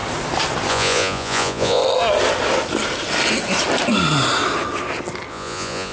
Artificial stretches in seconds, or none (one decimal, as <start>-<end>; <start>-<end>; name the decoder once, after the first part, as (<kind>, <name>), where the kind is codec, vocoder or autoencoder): 0.7-1.8 (vocoder, Vocos); 5.3-5.9